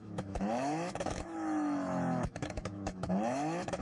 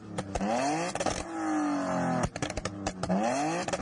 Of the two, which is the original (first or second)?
second